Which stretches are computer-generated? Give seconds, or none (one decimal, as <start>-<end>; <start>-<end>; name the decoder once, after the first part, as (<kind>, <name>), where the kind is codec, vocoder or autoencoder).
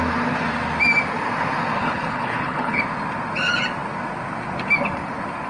1.8-2.8 (codec, HILCodec)